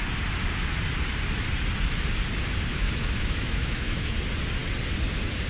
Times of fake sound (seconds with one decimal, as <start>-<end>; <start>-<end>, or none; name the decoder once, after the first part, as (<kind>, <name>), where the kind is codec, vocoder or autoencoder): 2.7-4.1 (autoencoder, DAC-VAE)